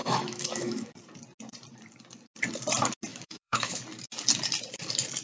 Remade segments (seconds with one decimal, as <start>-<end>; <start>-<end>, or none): 0.0-0.9; 3.1-3.8